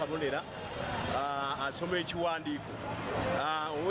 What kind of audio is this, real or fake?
real